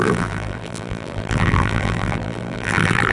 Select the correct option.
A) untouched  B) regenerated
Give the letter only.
B